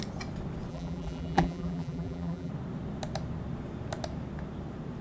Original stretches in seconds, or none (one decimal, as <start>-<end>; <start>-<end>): 0.0-0.7; 2.5-5.0